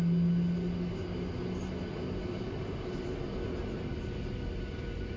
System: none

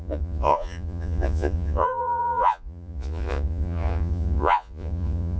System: vocoder, Vocos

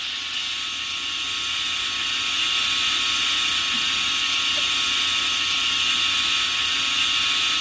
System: none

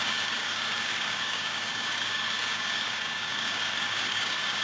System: codec, DAC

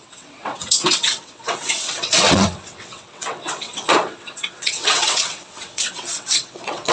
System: vocoder, WaveNeXt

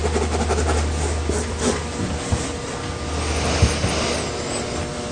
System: none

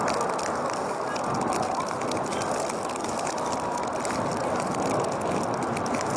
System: none